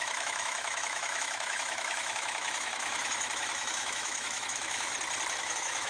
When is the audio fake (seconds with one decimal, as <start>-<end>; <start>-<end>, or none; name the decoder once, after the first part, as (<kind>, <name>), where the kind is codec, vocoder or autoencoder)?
0.0-4.9 (autoencoder, DAC-VAE); 5.4-5.9